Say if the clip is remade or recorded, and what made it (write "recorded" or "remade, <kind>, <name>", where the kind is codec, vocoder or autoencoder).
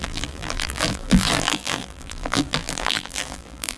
remade, vocoder, BigVGAN v2